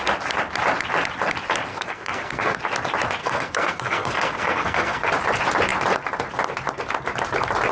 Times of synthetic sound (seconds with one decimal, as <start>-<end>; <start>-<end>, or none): 1.7-2.6; 3.2-5.1